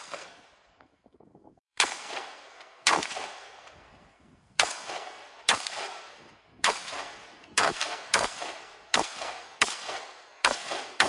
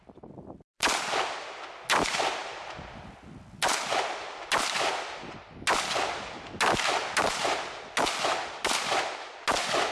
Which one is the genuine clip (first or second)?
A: second